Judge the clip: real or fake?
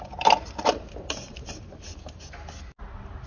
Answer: real